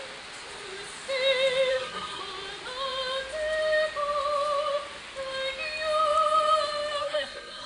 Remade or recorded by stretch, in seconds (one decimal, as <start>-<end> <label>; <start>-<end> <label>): 0.0-1.7 recorded; 1.7-2.2 remade; 2.2-7.0 recorded; 7.0-7.7 remade